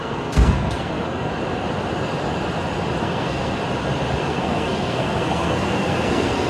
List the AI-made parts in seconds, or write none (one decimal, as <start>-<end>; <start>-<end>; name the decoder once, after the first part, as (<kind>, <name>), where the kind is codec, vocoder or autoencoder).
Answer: 0.0-1.3 (codec, SNAC); 3.0-3.6; 4.2-6.5